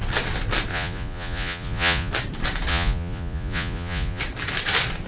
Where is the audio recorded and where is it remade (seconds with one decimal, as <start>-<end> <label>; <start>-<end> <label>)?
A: 0.0-0.7 recorded; 0.7-2.1 remade; 2.1-2.7 recorded; 2.7-4.2 remade; 4.2-5.1 recorded